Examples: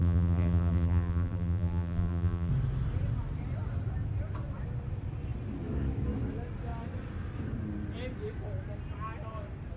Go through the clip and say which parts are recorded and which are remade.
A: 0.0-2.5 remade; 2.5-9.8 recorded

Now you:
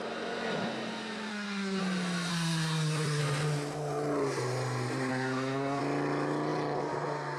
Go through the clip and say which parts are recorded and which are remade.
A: 0.0-1.3 recorded; 1.3-1.8 remade; 1.8-2.3 recorded; 2.3-3.2 remade; 3.2-5.1 recorded; 5.1-5.8 remade; 5.8-7.4 recorded

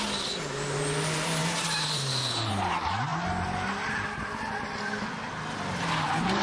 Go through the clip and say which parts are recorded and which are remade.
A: 0.0-1.4 recorded; 1.4-2.5 remade; 2.5-6.4 recorded